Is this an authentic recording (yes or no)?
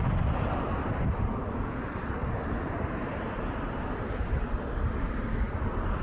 yes